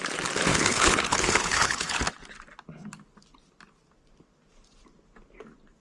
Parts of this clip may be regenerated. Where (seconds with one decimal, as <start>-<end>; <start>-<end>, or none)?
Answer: 0.5-2.0